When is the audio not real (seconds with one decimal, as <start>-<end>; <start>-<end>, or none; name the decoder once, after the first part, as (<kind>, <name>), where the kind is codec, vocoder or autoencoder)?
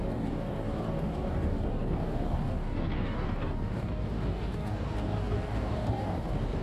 0.0-6.6 (codec, DAC)